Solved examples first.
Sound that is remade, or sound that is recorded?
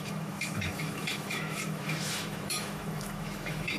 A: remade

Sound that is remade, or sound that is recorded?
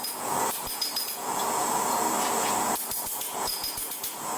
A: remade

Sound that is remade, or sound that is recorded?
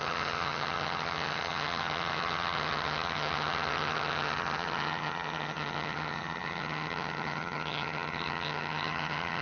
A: remade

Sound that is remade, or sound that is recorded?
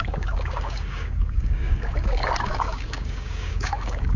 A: remade